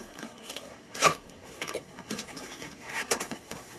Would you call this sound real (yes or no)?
no